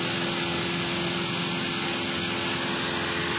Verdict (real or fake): real